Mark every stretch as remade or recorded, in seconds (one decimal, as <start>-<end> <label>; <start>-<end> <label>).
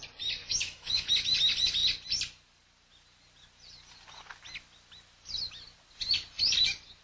0.0-0.4 recorded; 0.4-1.1 remade; 1.1-7.0 recorded